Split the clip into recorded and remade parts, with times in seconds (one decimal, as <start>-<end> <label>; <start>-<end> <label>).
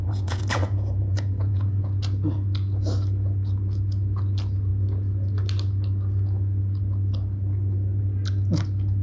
0.0-1.8 remade; 1.8-9.0 recorded